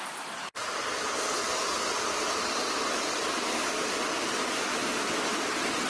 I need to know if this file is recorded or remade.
recorded